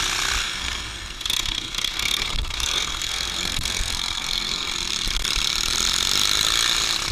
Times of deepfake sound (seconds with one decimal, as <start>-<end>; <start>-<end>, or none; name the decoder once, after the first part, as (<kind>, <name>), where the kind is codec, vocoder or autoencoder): 0.4-4.7 (codec, SNAC)